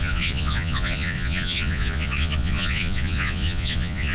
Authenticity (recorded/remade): remade